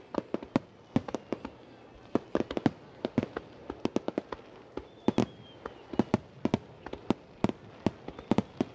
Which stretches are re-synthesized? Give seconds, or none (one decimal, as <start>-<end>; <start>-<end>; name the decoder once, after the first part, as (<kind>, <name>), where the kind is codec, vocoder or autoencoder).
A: none